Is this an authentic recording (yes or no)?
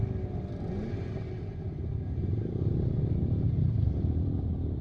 yes